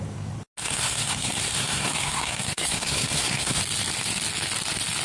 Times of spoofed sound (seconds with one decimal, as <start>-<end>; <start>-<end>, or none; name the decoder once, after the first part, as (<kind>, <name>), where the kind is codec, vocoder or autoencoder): 0.6-3.6 (codec, SNAC)